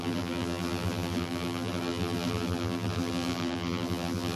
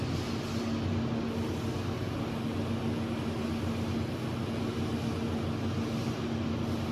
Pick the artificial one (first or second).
first